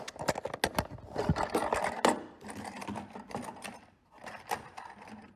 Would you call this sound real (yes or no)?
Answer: yes